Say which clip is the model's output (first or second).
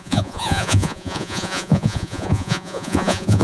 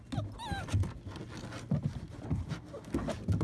first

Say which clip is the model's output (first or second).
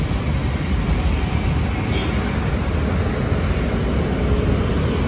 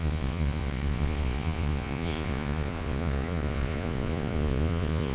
second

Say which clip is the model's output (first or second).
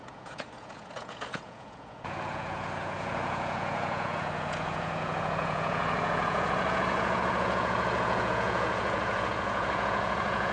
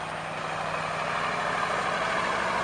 first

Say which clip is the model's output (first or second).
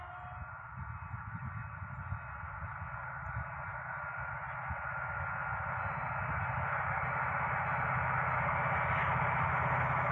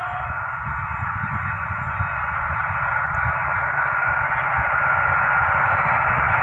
second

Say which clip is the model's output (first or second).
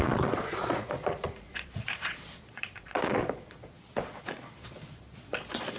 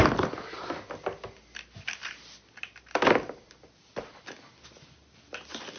first